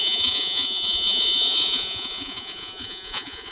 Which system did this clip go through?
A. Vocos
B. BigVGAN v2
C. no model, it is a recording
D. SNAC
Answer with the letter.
A